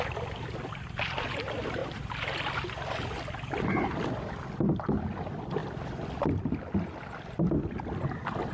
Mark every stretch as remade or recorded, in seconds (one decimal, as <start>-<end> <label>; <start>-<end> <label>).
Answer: 0.0-1.8 recorded; 1.8-4.1 remade; 4.1-8.5 recorded